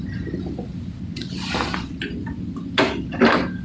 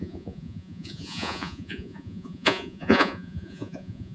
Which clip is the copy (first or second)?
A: second